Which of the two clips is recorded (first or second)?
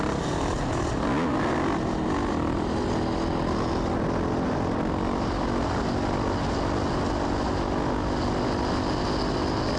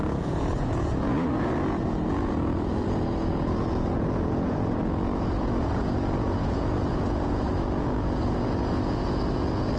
first